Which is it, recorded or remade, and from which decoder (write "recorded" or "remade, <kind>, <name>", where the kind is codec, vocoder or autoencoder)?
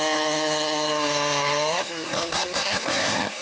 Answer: remade, codec, SNAC